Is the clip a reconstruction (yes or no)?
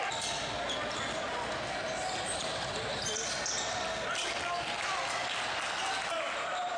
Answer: no